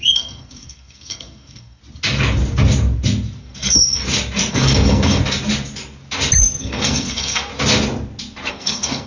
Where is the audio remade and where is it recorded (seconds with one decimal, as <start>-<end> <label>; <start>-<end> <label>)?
0.0-1.8 remade; 1.8-3.4 recorded; 3.4-4.0 remade; 4.0-4.5 recorded; 4.5-5.2 remade; 5.2-6.6 recorded; 6.6-7.5 remade; 7.5-8.5 recorded; 8.5-9.1 remade

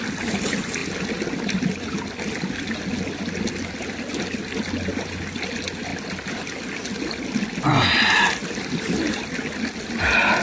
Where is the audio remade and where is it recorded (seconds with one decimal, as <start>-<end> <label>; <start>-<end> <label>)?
0.0-10.4 recorded

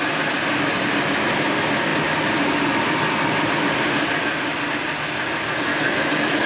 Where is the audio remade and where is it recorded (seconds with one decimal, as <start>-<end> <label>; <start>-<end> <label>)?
0.0-5.7 recorded; 5.7-6.5 remade

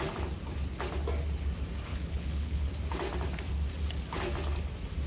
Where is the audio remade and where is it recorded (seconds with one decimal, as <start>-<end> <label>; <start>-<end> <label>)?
0.0-1.9 recorded; 1.9-2.7 remade; 2.7-5.1 recorded

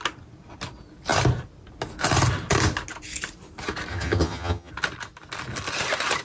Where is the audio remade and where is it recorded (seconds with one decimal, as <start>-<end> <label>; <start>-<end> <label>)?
0.0-3.9 recorded; 3.9-4.7 remade; 4.7-6.2 recorded

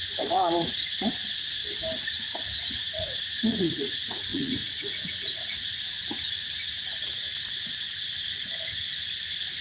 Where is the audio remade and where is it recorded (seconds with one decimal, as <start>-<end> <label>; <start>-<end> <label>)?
0.0-1.6 remade; 1.6-2.7 recorded; 2.7-7.2 remade; 7.2-9.6 recorded

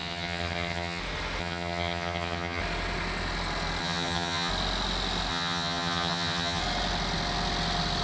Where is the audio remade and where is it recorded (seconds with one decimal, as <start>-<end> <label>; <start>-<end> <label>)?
0.0-1.0 remade; 1.0-1.4 recorded; 1.4-2.6 remade; 2.6-3.8 recorded; 3.8-4.5 remade; 4.5-5.3 recorded; 5.3-6.6 remade; 6.6-8.0 recorded

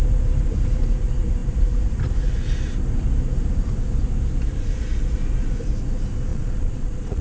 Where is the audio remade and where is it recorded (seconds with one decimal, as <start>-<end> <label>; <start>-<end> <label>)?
0.0-6.3 recorded; 6.3-7.2 remade